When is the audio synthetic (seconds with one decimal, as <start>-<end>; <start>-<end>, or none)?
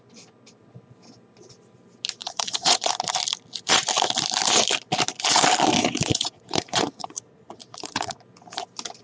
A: 2.2-2.9; 5.8-8.2